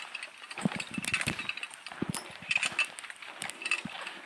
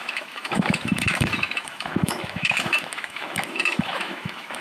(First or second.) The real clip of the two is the first